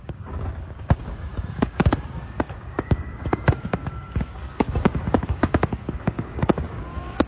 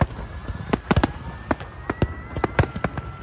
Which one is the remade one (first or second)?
first